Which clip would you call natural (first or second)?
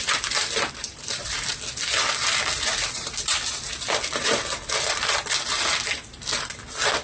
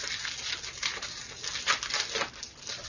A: second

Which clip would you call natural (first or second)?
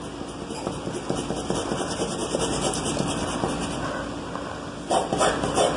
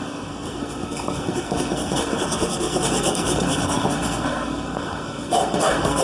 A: first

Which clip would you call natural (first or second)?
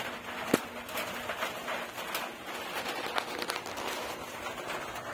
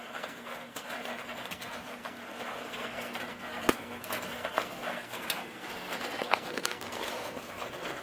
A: first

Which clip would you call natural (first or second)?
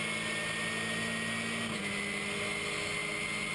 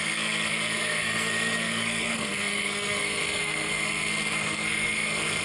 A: first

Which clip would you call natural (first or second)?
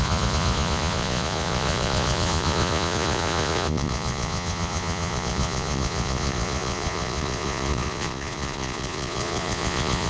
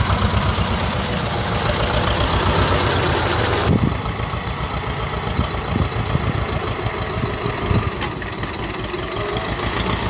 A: second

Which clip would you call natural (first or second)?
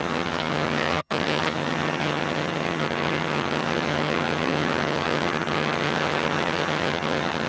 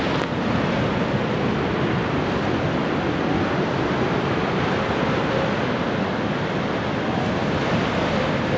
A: second